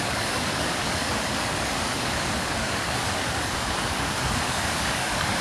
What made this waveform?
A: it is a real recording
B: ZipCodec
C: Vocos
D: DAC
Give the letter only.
D